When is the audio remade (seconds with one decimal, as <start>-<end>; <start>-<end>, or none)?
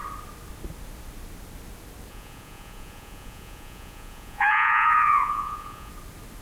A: 2.1-5.9